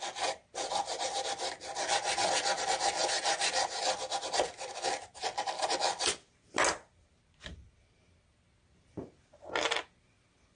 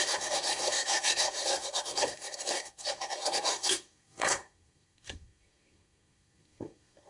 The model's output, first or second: second